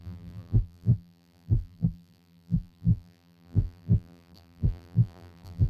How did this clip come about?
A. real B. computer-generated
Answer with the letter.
B